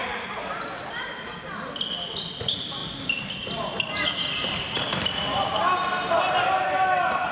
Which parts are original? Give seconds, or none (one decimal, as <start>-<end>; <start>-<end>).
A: 0.0-7.3